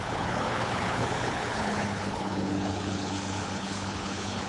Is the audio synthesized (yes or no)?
yes